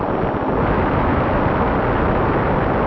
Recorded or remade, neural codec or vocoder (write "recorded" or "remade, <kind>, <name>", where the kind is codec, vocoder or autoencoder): recorded